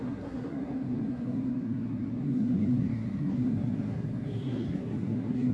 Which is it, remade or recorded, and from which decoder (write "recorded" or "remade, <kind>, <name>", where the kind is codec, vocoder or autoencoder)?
remade, codec, SNAC